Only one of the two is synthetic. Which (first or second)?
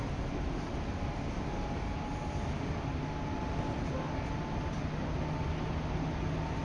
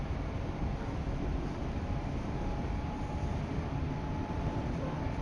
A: second